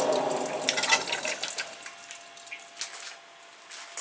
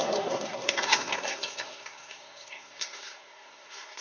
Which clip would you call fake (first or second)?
second